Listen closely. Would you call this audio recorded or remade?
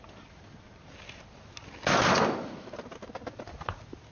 recorded